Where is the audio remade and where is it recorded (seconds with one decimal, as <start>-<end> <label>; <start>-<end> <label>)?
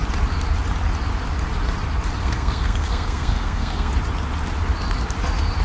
0.0-2.2 recorded; 2.2-3.9 remade; 3.9-5.6 recorded